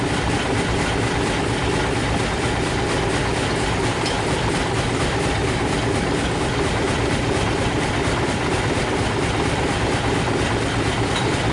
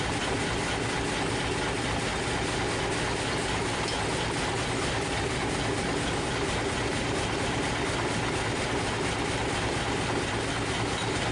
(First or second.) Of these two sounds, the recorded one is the second